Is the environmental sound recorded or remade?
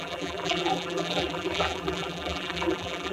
remade